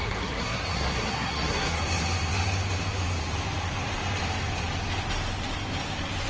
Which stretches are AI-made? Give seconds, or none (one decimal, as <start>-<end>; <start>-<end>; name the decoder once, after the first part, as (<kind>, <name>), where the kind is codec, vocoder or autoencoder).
0.0-1.8 (codec, SNAC)